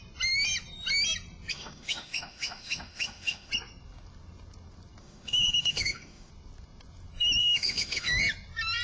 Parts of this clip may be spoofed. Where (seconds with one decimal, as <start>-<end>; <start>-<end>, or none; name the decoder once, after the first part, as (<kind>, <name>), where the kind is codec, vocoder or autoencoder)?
1.5-3.5 (autoencoder, DAC-VAE); 5.0-6.3; 7.4-8.2